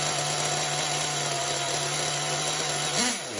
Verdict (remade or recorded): recorded